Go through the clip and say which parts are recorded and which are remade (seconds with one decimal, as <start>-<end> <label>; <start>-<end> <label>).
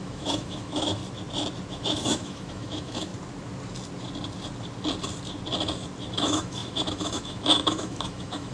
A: 0.0-1.0 remade; 1.0-1.7 recorded; 1.7-3.1 remade; 3.1-6.1 recorded; 6.1-8.5 remade